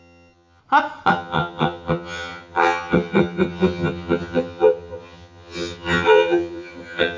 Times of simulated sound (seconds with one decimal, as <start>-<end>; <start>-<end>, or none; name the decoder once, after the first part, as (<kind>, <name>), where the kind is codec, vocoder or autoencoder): 0.0-0.6 (vocoder, HiFi-GAN); 1.1-7.2